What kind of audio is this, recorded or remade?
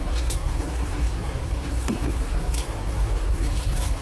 remade